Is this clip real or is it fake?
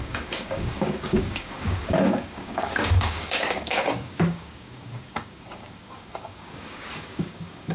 fake